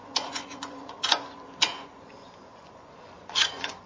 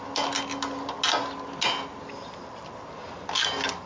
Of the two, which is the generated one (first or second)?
first